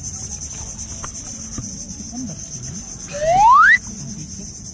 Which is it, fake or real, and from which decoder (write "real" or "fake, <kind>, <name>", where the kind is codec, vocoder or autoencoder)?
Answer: real